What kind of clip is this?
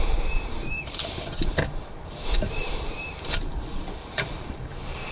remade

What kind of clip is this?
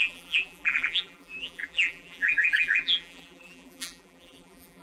remade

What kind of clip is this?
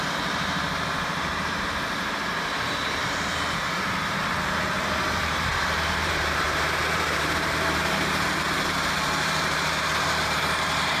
remade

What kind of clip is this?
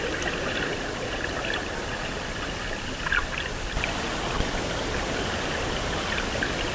recorded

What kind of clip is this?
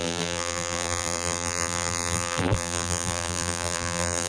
remade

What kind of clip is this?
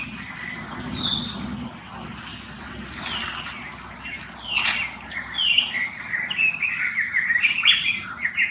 recorded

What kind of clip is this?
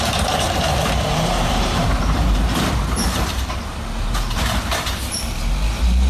remade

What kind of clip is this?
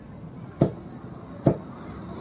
recorded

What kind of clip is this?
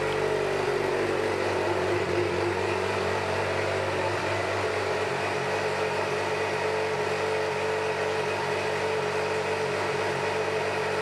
recorded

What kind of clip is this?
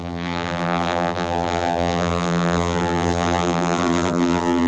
remade